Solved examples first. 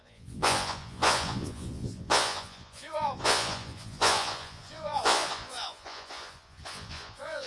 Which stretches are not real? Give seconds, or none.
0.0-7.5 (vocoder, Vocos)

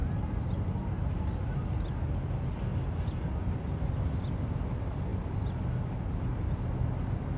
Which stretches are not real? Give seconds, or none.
0.0-2.7 (vocoder, BigVGAN v2); 4.2-7.4

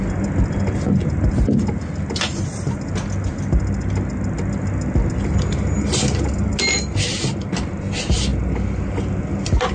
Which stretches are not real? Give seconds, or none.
none